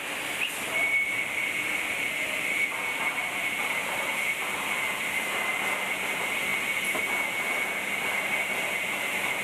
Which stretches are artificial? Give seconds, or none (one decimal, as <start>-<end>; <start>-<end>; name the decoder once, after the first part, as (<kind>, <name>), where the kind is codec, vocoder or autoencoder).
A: 0.0-6.5 (vocoder, BigVGAN v2); 7.8-9.4